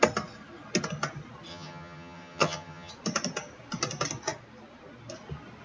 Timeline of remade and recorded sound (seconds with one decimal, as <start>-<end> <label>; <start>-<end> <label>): 0.0-1.5 recorded; 1.5-2.9 remade; 2.9-5.6 recorded